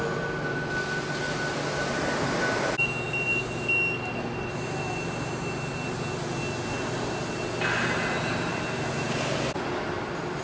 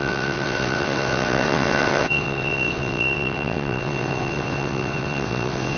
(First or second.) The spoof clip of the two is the second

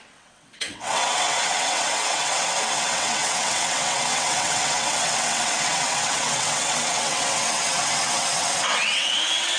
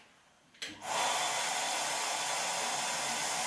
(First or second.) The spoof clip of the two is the first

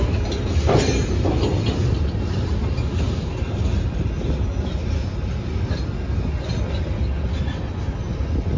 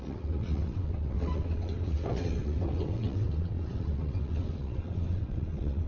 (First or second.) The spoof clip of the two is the second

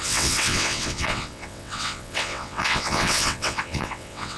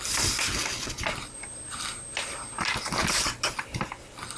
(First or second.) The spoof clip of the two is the first